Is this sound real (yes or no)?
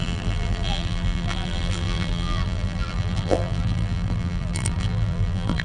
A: no